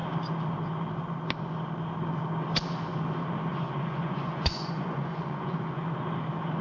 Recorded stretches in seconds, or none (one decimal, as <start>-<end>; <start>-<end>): 0.0-3.5; 5.8-6.6